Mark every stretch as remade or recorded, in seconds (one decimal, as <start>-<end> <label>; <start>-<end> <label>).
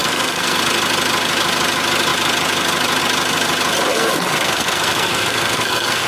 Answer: 0.0-0.6 remade; 0.6-3.9 recorded; 3.9-6.1 remade